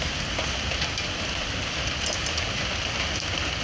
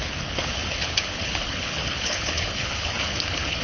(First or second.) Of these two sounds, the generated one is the second